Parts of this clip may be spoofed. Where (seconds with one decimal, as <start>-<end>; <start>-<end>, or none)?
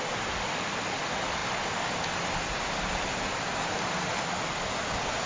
none